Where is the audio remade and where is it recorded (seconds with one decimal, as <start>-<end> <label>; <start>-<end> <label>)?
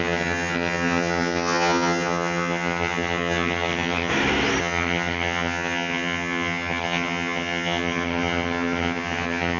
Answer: 0.0-4.1 remade; 4.1-4.6 recorded; 4.6-9.6 remade